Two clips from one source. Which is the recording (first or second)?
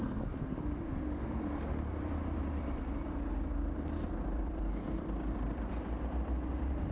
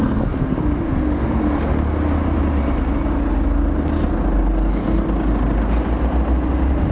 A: second